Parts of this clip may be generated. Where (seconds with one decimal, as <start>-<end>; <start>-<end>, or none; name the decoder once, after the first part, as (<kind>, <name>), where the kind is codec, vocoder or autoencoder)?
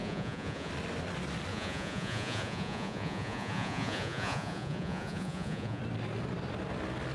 0.0-0.7 (vocoder, Vocos); 1.5-5.8